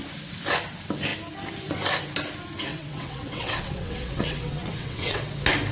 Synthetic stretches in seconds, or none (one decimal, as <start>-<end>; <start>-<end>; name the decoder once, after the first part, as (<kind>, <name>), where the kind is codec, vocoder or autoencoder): 2.7-5.3 (vocoder, WaveNeXt)

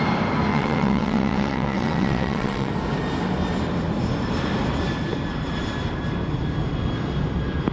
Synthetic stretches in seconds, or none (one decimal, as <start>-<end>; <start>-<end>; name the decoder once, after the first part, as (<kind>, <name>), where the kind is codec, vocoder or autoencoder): 0.5-2.7 (vocoder, WaveNeXt)

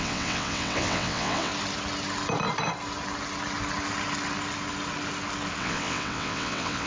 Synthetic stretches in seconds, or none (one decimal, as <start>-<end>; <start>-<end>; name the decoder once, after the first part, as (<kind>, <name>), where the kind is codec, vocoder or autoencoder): 0.0-1.5 (vocoder, WaveNeXt); 5.6-6.9

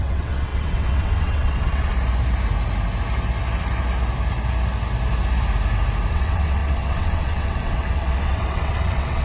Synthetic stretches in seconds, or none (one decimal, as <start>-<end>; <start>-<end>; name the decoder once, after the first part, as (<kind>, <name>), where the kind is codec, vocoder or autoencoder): 0.0-1.9 (vocoder, WaveNeXt); 6.1-9.2

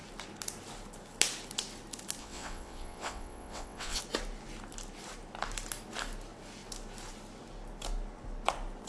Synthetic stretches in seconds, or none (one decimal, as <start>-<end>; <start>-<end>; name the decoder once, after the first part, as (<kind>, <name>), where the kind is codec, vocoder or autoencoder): 2.2-4.0 (vocoder, WaveNeXt)

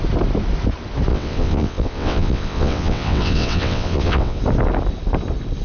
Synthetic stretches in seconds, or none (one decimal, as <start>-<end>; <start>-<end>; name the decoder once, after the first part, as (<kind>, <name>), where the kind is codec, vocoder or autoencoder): 1.1-4.4 (vocoder, WaveNeXt)

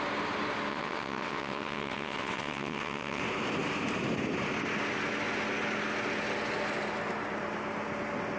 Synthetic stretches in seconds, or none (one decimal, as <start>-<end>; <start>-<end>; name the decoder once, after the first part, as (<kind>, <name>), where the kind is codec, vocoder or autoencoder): 0.7-3.2 (vocoder, WaveNeXt)

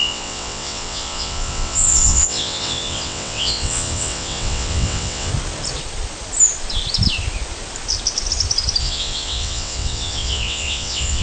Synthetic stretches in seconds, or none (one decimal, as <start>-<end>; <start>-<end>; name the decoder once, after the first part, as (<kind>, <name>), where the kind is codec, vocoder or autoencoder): 0.0-5.3 (vocoder, WaveNeXt); 8.8-11.2